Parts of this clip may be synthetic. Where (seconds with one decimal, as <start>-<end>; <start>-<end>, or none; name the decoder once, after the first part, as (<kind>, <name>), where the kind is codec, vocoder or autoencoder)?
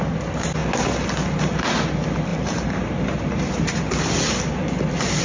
2.3-3.8 (vocoder, BigVGAN v2)